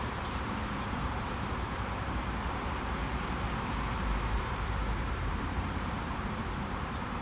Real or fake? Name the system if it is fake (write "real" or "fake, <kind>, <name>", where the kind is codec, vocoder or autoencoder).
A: fake, vocoder, BigVGAN v2